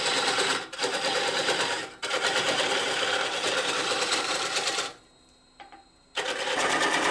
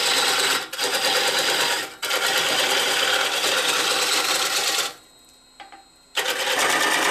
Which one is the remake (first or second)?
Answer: first